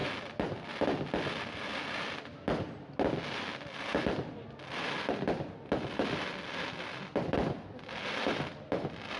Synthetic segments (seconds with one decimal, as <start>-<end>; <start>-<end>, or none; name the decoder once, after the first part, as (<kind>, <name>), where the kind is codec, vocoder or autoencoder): none